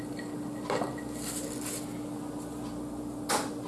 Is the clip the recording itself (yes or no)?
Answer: yes